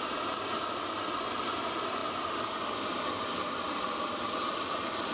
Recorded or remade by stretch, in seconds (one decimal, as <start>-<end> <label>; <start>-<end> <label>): 0.0-5.1 recorded